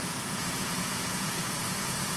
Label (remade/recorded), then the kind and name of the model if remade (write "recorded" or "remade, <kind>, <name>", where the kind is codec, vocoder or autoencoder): remade, vocoder, Vocos